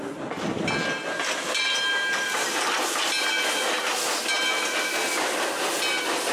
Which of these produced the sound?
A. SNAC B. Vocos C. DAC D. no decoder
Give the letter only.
D